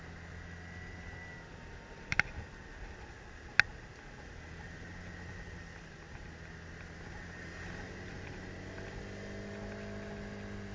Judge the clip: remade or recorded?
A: recorded